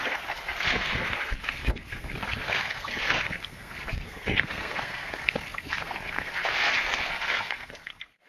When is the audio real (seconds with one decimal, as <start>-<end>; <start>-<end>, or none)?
none